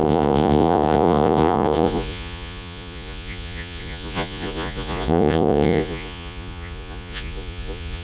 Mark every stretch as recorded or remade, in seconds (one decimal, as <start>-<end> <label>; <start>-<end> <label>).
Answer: 0.0-8.0 remade

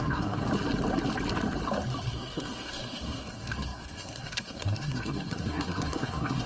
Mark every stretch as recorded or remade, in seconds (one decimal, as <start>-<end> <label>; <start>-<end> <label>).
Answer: 0.0-0.4 remade; 0.4-2.1 recorded; 2.1-6.5 remade